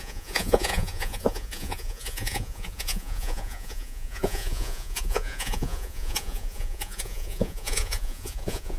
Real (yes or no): no